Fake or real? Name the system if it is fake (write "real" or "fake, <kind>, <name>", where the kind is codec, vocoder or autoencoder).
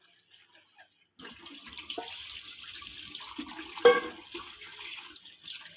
fake, vocoder, BigVGAN v2